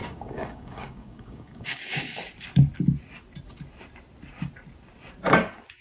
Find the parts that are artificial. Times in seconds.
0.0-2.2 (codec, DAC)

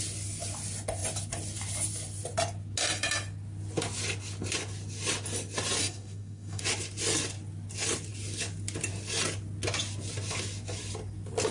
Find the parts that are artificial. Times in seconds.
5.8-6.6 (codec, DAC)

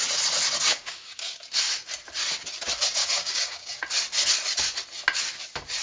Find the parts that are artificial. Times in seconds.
0.7-1.4 (codec, DAC); 3.0-3.7